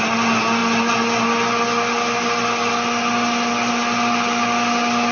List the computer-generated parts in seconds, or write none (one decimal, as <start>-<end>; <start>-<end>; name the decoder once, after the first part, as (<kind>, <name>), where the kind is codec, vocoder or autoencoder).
none